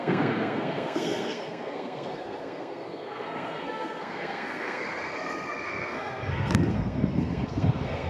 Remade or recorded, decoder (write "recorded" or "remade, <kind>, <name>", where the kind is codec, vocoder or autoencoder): remade, codec, SNAC